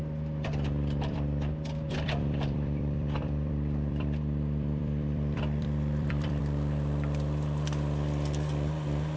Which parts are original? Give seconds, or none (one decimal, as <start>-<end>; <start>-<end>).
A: 6.4-9.2